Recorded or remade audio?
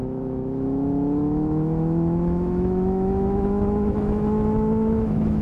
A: remade